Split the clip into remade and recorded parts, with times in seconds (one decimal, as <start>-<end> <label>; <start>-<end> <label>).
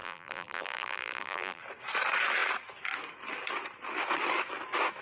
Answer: 0.0-1.6 remade; 1.6-5.0 recorded